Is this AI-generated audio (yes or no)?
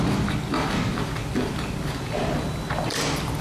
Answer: no